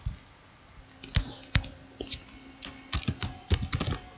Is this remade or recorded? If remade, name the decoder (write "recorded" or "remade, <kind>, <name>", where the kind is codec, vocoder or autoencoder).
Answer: recorded